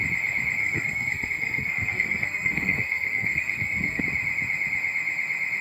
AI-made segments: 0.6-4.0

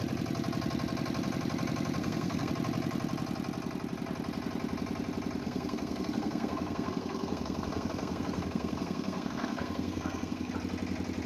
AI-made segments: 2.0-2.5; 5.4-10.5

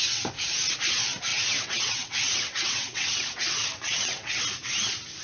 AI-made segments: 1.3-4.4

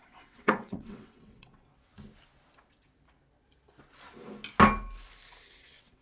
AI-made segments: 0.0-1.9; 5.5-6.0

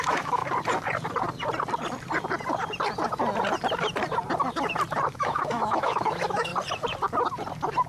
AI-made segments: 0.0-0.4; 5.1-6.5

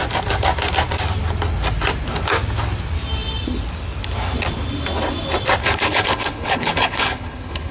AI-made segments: 5.6-7.7

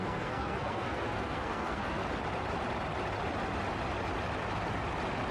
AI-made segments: 0.0-2.0

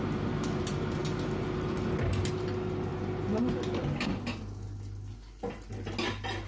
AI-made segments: none